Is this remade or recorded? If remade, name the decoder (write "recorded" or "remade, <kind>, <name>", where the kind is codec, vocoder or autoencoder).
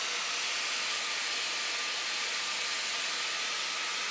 recorded